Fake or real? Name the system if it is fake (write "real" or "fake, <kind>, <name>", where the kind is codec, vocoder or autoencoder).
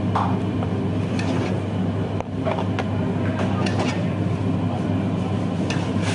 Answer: real